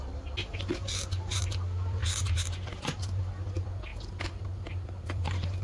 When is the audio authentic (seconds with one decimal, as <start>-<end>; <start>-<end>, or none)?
0.0-5.6